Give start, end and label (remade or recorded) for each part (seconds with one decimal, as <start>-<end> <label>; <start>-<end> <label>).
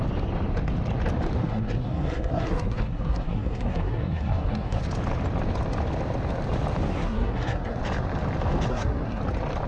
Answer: 0.0-1.4 recorded; 1.4-4.8 remade; 4.8-6.9 recorded; 6.9-7.8 remade; 7.8-8.7 recorded; 8.7-9.2 remade; 9.2-9.7 recorded